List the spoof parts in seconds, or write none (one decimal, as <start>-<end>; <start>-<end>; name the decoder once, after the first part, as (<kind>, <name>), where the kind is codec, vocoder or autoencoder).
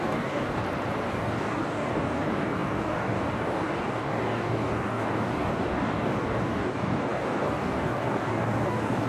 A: 0.0-0.6 (codec, DAC); 1.1-9.1